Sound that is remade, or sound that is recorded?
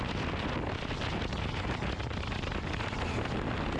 recorded